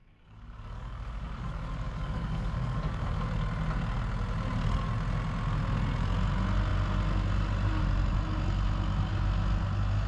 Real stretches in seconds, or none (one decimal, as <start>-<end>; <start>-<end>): 3.2-10.1

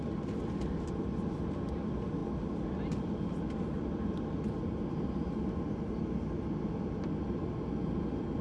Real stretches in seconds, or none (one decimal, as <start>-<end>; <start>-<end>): 0.0-8.4